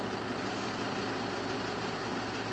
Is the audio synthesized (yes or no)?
no